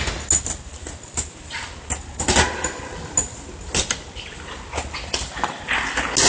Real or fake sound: real